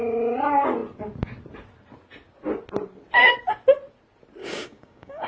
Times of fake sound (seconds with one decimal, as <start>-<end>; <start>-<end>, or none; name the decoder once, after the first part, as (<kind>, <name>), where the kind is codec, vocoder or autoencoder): 4.4-5.3 (codec, DAC)